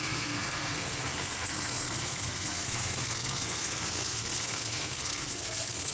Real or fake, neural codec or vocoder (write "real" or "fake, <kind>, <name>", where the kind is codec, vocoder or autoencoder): fake, codec, SNAC